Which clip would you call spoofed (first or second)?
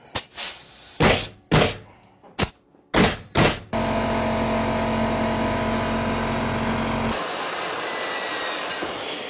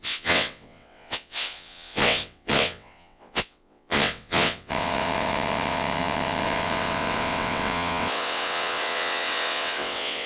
second